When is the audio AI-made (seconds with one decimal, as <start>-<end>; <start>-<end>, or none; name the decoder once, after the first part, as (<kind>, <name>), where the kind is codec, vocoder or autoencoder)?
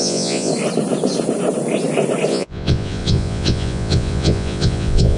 0.0-0.5 (vocoder, Vocos); 2.3-5.2